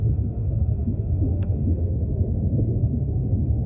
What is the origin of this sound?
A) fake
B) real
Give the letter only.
A